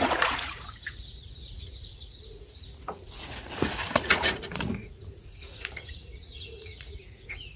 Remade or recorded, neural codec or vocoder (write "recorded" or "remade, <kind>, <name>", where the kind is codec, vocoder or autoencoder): remade, vocoder, Vocos